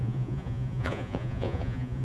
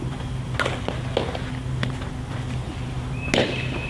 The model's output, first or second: first